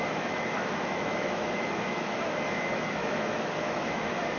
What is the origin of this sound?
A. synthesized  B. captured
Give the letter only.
A